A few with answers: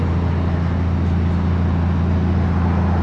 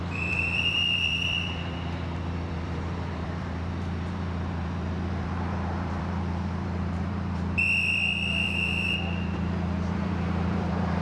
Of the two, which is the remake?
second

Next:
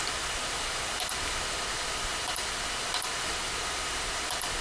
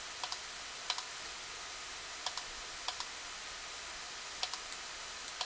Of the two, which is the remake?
first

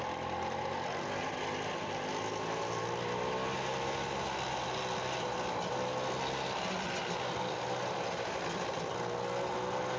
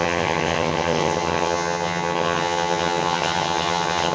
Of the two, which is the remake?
second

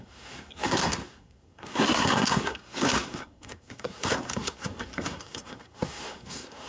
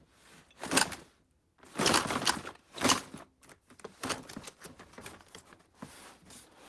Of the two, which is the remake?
first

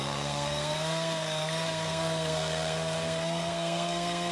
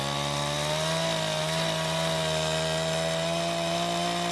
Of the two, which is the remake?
first